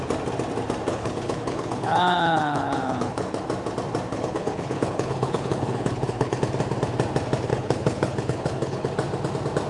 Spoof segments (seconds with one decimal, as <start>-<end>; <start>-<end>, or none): 0.9-3.4; 4.1-6.4; 7.5-8.9